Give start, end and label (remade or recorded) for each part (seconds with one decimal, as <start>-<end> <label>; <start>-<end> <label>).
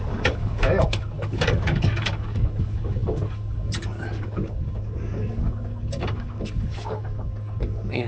0.0-8.1 remade